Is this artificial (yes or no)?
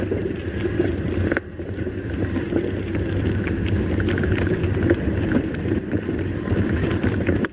no